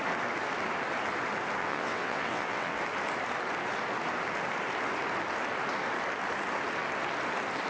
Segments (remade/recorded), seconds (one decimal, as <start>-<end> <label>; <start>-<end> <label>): 0.0-1.6 recorded; 1.6-2.8 remade; 2.8-7.7 recorded